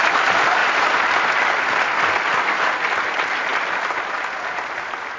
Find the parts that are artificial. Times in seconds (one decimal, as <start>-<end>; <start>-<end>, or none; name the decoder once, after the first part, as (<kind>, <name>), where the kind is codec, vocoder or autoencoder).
none